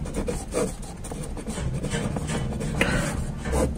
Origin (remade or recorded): recorded